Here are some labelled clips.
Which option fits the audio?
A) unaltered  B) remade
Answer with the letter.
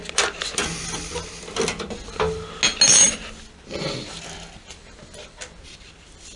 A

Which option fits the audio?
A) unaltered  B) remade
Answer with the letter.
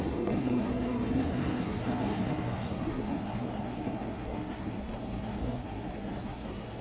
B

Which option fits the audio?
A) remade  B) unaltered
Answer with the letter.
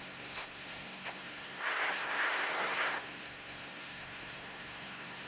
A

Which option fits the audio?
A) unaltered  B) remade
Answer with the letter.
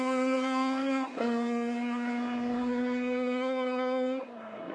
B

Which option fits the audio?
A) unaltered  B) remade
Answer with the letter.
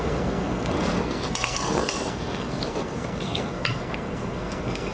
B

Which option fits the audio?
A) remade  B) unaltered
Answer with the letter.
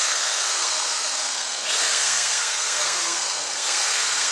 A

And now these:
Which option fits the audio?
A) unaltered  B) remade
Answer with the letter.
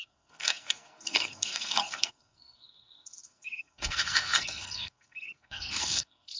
B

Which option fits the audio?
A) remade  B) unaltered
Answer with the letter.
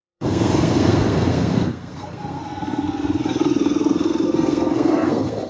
A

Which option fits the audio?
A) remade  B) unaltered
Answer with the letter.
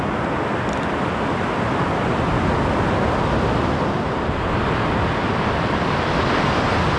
B